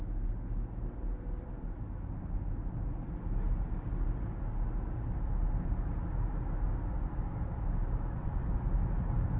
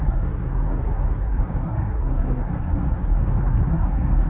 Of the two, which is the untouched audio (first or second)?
first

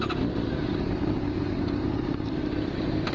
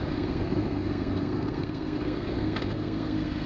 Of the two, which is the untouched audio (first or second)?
first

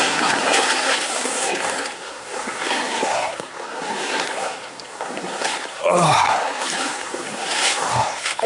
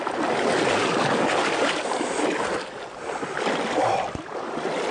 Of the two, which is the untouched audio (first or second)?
second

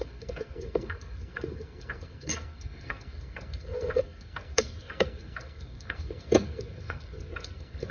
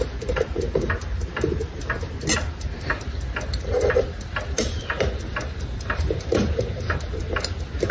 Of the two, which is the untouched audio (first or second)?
second